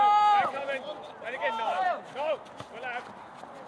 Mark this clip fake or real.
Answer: real